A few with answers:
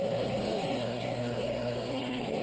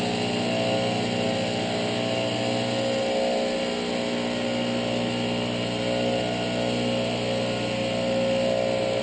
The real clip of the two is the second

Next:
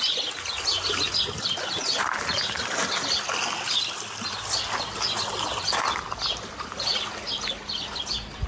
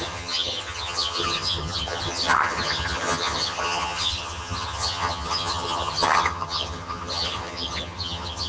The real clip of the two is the first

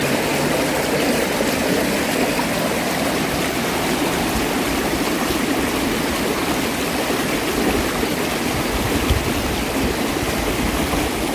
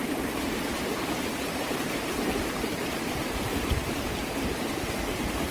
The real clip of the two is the first